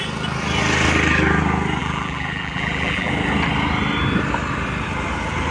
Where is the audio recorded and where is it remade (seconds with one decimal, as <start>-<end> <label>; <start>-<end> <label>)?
0.0-1.8 recorded; 1.8-3.1 remade; 3.1-5.5 recorded